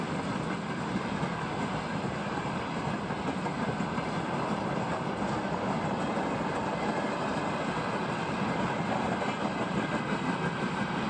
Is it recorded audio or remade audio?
recorded